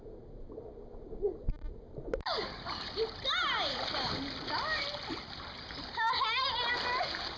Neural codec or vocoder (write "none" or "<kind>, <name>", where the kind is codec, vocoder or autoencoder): none